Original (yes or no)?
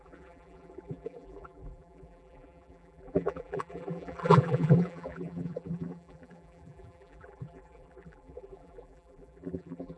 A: no